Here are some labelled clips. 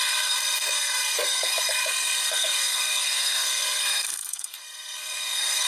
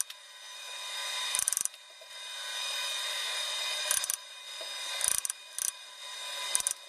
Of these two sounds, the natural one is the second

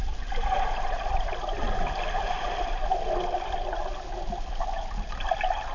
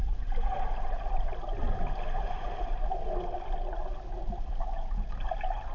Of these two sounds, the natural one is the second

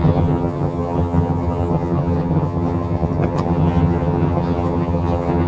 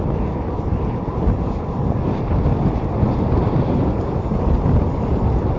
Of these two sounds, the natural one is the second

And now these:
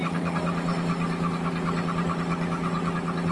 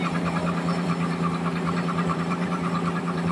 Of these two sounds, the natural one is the first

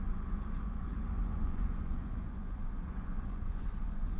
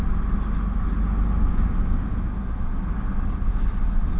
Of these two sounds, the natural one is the second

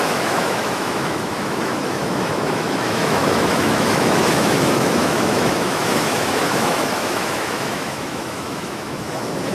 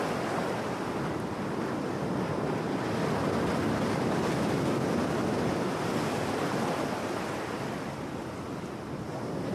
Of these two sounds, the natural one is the second